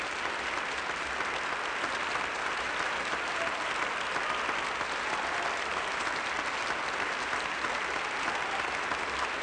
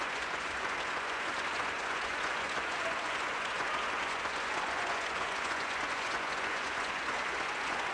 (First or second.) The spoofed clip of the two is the second